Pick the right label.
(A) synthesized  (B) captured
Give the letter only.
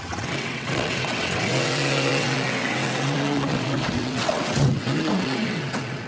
A